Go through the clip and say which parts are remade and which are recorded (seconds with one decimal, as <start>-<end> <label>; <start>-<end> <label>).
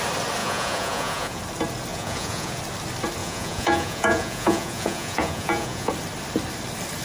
0.0-0.4 recorded; 0.4-1.4 remade; 1.4-1.9 recorded; 1.9-2.6 remade; 2.6-3.2 recorded; 3.2-5.9 remade; 5.9-7.0 recorded